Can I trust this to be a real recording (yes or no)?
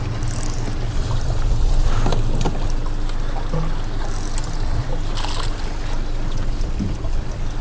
yes